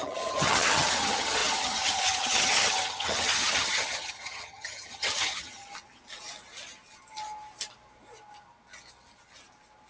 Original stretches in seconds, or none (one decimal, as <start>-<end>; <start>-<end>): 5.6-9.9

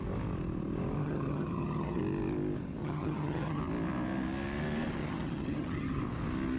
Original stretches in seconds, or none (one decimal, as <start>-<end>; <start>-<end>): 0.0-1.0; 2.0-2.8; 3.6-5.0; 6.0-6.6